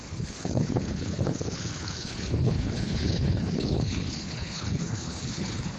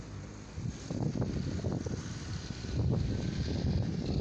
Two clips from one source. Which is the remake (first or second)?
first